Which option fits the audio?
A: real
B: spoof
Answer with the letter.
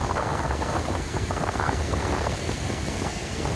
B